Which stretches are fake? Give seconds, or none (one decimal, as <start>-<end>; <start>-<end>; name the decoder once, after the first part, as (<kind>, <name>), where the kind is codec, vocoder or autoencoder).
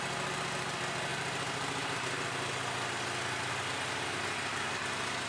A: none